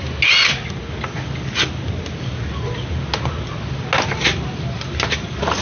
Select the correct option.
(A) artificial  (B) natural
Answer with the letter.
B